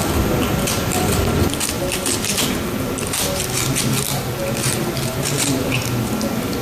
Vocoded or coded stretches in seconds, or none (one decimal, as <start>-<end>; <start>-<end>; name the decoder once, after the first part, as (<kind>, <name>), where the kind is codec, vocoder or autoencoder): none